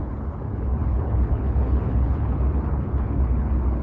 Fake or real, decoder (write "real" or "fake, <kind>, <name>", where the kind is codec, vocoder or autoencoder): fake, codec, HILCodec